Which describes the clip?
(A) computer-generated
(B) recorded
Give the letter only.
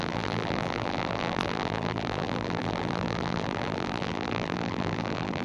A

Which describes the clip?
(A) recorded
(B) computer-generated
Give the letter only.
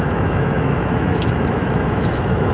B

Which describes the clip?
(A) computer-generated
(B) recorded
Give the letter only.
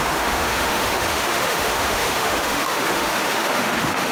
A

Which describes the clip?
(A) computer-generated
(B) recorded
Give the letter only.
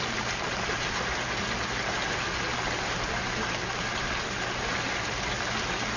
B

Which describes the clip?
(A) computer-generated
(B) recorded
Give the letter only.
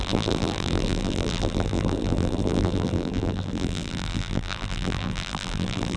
A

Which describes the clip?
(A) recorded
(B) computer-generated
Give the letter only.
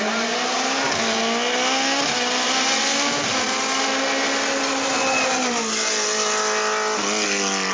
A